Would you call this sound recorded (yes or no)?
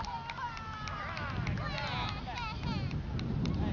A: yes